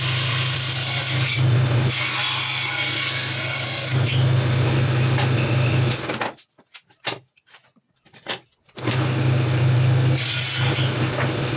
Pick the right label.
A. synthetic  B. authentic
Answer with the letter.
B